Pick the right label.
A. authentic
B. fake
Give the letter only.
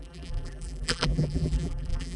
B